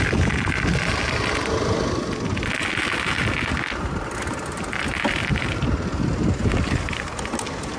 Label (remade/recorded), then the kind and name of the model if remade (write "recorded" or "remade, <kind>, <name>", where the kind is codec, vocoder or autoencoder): recorded